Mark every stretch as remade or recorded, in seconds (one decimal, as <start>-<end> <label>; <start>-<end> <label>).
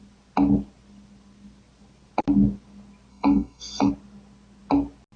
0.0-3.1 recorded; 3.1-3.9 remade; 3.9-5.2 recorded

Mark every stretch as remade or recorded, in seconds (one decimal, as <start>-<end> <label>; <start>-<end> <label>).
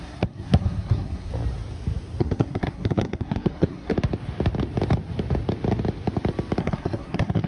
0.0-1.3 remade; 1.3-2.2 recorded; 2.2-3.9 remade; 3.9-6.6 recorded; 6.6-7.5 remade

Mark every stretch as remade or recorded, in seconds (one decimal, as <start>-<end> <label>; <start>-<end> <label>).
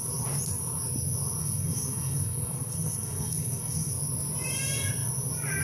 0.0-1.4 recorded; 1.4-3.9 remade; 3.9-5.6 recorded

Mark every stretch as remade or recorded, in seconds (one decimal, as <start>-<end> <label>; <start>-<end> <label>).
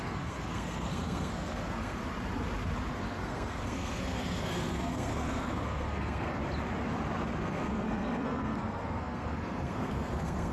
0.0-2.0 remade; 2.0-2.9 recorded; 2.9-6.4 remade; 6.4-7.4 recorded; 7.4-10.5 remade